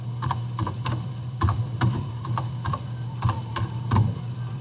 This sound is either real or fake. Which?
fake